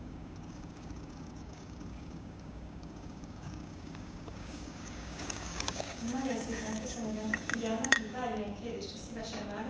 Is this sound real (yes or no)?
no